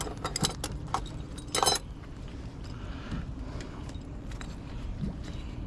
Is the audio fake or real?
real